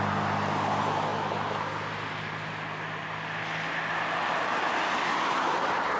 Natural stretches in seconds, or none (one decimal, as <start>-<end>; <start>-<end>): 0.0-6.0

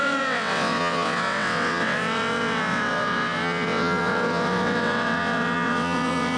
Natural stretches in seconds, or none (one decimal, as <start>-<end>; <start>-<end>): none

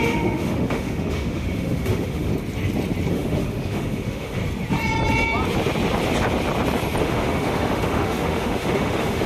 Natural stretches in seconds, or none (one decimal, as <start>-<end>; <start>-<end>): 2.3-3.1; 4.4-7.0

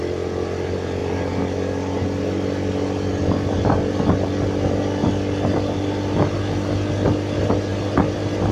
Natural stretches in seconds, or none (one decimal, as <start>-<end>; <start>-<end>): 0.0-8.5

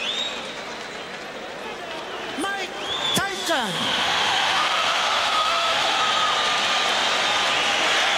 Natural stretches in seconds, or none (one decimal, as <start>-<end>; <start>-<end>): 0.0-3.3; 6.0-8.2